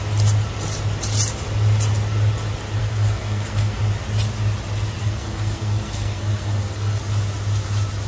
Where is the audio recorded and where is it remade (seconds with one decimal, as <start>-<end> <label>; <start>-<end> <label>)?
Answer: 0.0-2.8 recorded; 2.8-3.8 remade; 3.8-5.0 recorded; 5.0-7.0 remade; 7.0-8.1 recorded